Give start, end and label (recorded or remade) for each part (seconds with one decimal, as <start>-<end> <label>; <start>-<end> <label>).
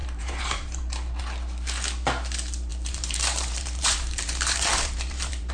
0.0-1.2 remade; 1.2-2.7 recorded; 2.7-5.5 remade